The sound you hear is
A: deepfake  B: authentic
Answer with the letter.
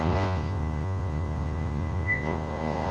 A